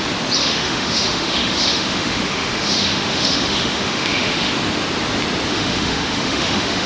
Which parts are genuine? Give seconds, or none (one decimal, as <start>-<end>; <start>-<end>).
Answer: 0.0-0.4; 4.5-5.5